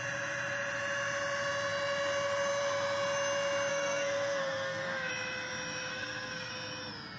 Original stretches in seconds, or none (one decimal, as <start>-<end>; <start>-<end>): 0.0-3.7; 5.1-5.9; 6.5-7.2